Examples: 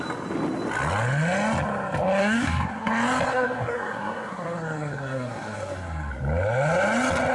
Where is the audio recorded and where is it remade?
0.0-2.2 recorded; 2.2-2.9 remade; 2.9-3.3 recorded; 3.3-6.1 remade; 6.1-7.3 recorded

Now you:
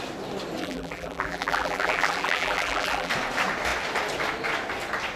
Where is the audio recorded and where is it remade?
0.0-0.6 recorded; 0.6-3.1 remade; 3.1-5.2 recorded